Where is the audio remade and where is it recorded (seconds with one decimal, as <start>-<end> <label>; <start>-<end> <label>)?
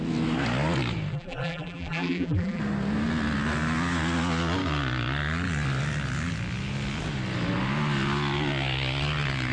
0.0-1.1 recorded; 1.1-2.6 remade; 2.6-9.5 recorded